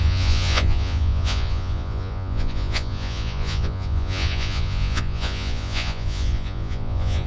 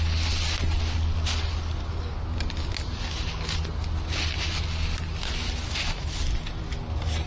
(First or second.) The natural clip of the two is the second